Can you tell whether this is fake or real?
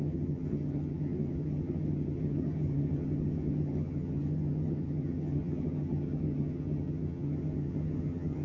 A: fake